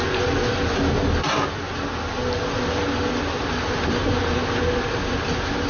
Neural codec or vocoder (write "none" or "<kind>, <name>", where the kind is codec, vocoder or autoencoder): none